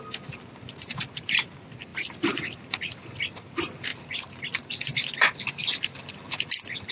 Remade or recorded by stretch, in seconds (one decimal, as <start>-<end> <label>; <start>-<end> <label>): 0.0-6.9 recorded